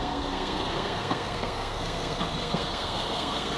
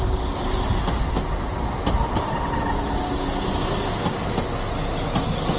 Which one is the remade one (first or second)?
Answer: first